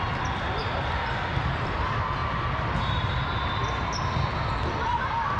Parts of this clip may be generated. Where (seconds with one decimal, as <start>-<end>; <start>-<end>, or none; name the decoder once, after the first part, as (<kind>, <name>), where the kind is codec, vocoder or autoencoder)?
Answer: none